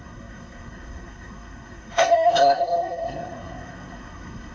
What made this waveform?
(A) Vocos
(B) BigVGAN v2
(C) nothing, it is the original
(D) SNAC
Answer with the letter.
D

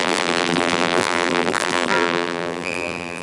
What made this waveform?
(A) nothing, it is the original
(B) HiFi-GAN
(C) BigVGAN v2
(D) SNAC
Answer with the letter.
C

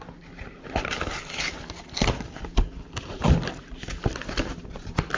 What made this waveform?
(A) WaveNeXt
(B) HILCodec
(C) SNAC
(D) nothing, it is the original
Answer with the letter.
D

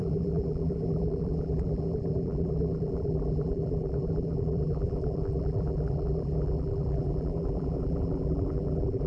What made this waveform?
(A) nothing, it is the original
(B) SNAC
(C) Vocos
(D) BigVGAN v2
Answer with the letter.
D